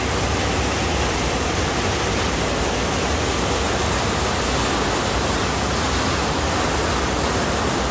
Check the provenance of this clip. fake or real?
real